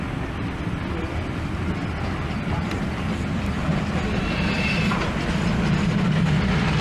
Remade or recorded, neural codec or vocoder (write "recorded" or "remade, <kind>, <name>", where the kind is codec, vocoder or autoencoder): recorded